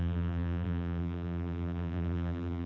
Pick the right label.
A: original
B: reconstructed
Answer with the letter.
B